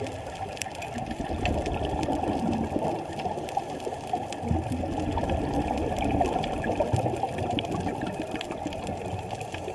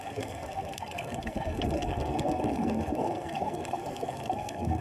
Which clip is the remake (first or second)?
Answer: second